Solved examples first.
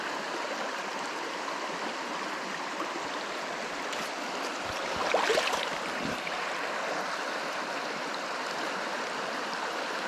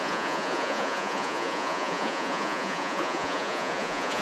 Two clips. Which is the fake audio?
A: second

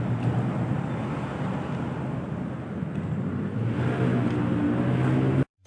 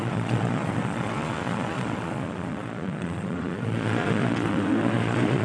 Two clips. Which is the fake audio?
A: second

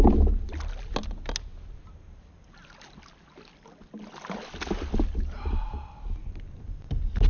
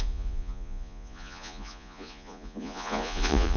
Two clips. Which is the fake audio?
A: second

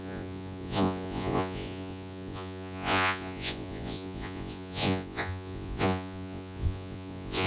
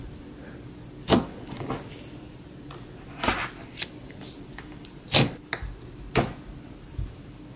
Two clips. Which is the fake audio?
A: first